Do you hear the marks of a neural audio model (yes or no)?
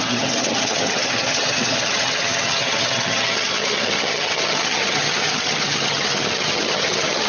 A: yes